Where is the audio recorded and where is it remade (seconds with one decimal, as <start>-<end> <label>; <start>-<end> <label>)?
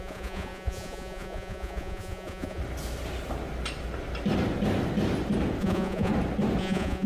0.0-2.6 remade; 2.6-5.6 recorded; 5.6-6.1 remade; 6.1-6.6 recorded; 6.6-7.1 remade